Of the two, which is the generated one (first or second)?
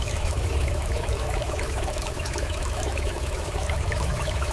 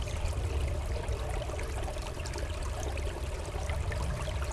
first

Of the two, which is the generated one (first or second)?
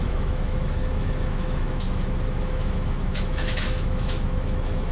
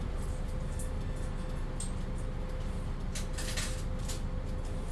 first